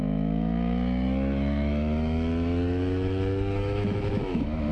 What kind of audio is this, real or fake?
fake